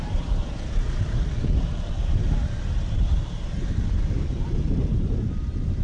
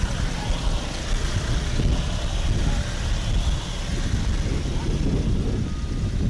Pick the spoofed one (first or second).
first